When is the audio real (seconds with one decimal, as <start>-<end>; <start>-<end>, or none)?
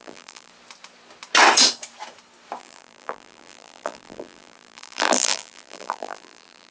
0.5-2.6